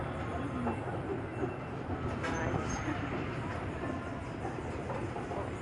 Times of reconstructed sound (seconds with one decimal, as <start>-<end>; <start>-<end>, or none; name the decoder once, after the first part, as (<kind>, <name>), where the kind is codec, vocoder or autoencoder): none